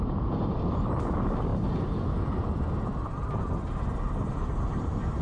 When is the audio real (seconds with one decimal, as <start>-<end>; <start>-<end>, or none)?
0.0-5.2